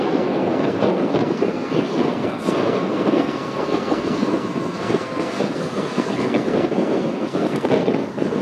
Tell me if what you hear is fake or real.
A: fake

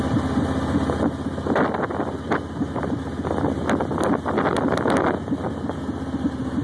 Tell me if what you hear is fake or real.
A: real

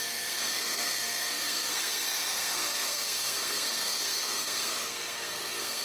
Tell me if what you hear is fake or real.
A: fake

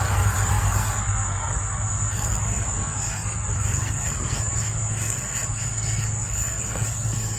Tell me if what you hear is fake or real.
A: fake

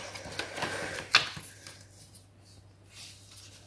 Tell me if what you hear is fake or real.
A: real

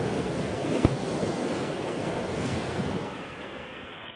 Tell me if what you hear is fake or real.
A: fake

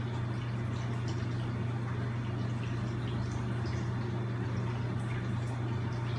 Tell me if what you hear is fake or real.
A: real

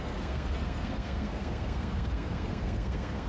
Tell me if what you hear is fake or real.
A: fake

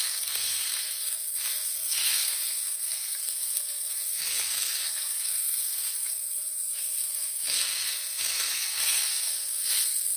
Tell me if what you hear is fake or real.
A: fake